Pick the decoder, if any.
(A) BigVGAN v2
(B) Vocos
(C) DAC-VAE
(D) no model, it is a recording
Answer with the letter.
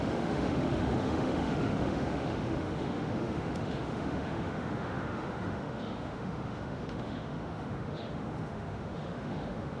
C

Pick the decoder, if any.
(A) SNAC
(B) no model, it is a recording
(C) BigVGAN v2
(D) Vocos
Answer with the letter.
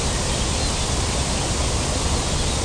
B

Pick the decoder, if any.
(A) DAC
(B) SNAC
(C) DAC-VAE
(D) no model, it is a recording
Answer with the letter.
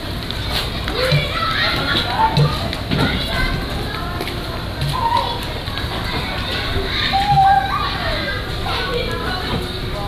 D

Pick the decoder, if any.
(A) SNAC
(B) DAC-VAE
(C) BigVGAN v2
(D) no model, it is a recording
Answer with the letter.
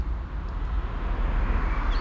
D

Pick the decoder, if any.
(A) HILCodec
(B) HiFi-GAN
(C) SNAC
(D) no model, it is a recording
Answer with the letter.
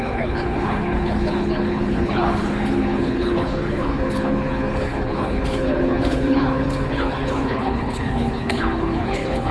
A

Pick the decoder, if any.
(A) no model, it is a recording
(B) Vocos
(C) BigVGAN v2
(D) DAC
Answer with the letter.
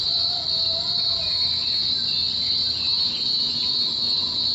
A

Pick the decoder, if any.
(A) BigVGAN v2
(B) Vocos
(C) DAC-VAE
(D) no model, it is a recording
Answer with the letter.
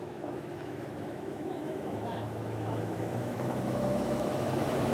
C